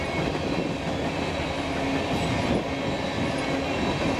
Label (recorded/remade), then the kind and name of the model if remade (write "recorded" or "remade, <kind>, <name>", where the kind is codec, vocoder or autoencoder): recorded